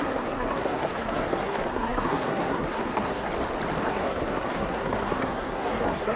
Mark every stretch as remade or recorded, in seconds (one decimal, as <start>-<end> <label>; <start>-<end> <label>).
0.0-3.3 remade; 3.3-3.9 recorded; 3.9-6.2 remade